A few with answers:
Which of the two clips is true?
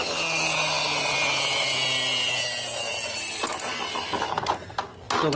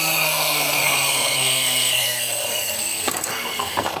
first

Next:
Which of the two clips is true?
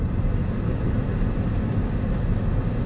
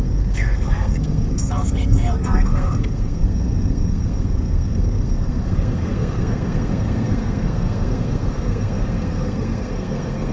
first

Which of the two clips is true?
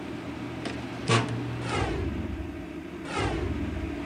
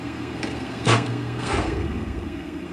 first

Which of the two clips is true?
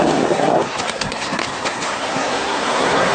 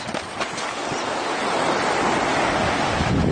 second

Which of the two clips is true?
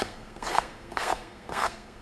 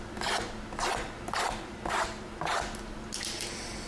second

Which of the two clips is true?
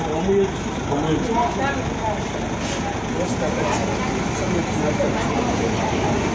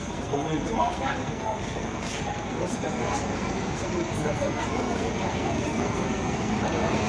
first